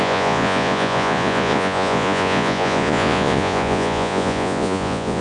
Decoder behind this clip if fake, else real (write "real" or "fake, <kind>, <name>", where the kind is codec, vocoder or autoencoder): fake, vocoder, Vocos